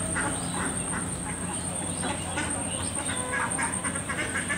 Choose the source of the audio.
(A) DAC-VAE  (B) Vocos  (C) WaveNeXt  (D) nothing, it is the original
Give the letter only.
D